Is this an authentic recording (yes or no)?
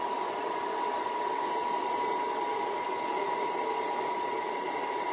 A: yes